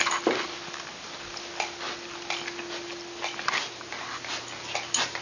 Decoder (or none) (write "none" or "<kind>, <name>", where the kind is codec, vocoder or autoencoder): none